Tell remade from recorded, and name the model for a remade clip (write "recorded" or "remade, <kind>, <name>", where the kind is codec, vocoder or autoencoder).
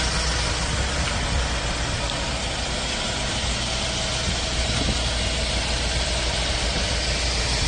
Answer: recorded